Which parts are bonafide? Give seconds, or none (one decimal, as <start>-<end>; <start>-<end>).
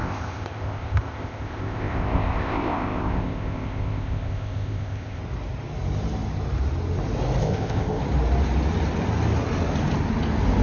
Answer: 5.2-7.4; 8.0-10.6